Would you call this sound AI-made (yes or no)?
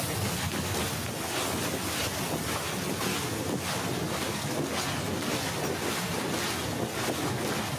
no